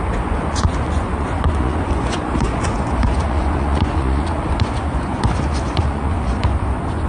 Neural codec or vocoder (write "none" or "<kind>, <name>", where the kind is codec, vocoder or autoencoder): vocoder, Vocos